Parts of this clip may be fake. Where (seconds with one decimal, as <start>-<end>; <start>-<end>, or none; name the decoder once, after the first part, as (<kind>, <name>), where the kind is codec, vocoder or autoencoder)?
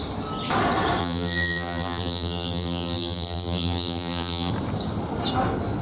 1.0-4.5 (vocoder, BigVGAN v2)